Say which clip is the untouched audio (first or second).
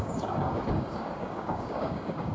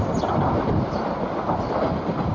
second